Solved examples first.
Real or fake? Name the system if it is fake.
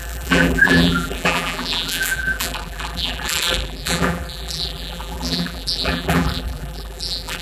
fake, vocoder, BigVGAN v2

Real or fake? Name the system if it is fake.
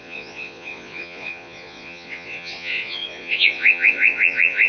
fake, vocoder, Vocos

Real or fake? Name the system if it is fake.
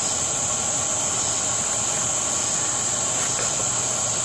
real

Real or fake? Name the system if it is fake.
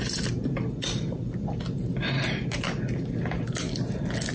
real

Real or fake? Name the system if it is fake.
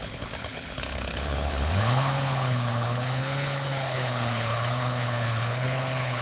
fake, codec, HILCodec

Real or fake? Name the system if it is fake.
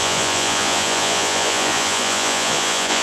fake, vocoder, Vocos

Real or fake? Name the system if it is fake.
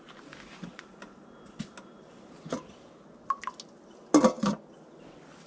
real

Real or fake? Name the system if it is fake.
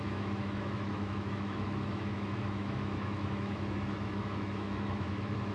fake, autoencoder, DAC-VAE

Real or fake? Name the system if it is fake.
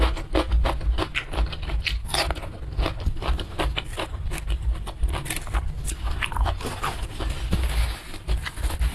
real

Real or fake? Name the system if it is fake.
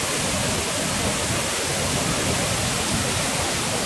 real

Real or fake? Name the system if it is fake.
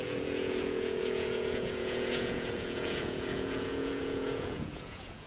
fake, vocoder, Vocos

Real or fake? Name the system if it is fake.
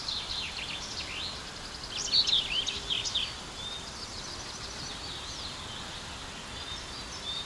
real